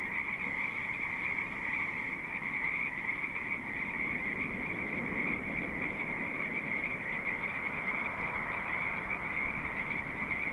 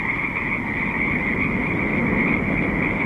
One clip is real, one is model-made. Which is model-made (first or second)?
first